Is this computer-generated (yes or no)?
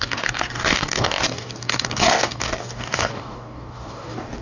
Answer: yes